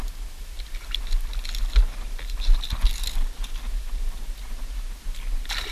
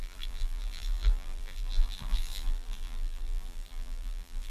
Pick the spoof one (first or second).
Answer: second